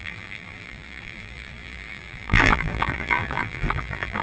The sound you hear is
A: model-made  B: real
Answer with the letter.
A